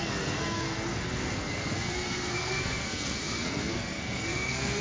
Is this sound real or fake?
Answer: fake